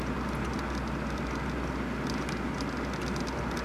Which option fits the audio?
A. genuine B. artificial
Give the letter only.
A